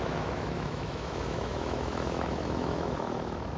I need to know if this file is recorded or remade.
remade